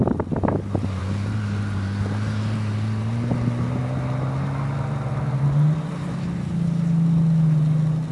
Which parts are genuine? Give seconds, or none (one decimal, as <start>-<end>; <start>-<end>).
0.0-8.1